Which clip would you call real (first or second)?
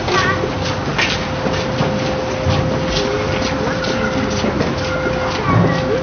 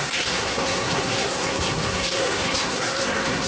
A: first